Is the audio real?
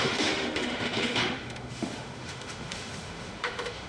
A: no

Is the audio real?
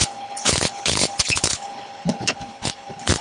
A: no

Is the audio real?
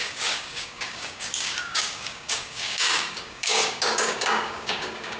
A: no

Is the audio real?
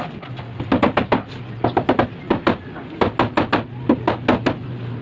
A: yes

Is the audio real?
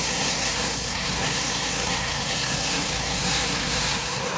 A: no